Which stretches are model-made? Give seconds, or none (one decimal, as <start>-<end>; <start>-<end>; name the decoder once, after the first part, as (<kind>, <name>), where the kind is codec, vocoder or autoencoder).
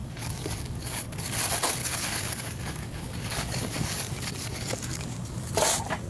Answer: 0.0-1.3 (codec, DAC); 1.8-5.5